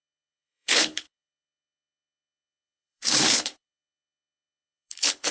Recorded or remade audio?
remade